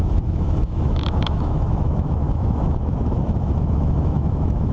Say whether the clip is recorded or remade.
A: remade